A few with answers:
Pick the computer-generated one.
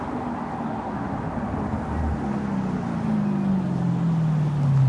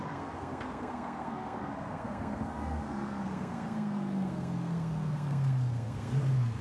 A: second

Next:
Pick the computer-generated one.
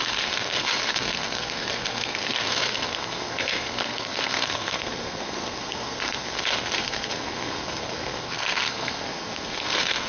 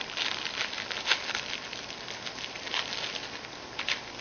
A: first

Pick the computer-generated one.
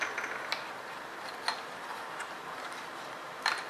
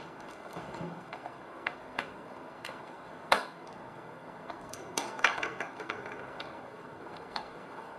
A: second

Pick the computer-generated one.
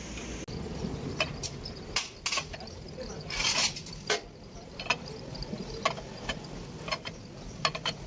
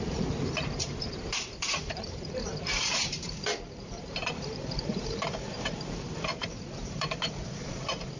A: second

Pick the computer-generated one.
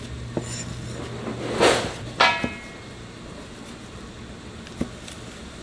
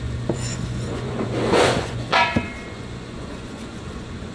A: second